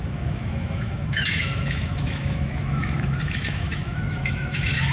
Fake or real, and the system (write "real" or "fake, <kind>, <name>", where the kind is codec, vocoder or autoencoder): fake, autoencoder, DAC-VAE